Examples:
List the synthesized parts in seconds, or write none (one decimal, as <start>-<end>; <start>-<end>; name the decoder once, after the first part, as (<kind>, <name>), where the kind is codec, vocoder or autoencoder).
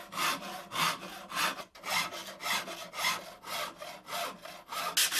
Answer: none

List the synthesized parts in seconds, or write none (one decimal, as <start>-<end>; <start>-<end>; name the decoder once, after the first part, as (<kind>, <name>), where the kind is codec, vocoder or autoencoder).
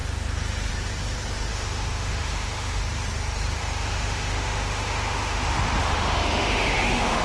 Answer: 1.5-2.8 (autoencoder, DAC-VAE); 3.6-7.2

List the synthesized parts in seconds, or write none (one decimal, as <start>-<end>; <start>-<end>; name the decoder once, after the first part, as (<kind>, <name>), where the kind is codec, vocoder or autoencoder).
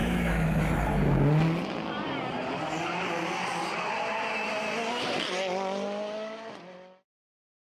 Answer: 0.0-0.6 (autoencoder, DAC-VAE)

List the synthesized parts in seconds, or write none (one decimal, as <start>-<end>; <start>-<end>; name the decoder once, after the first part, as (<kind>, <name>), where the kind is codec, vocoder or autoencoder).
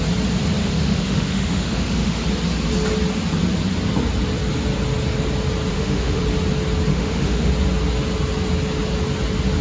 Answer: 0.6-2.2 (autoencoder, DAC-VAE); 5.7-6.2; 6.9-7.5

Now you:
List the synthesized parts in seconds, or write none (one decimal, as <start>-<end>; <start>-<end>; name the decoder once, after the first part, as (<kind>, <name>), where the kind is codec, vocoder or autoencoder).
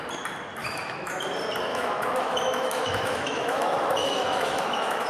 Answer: 0.6-1.2 (autoencoder, DAC-VAE); 1.7-5.1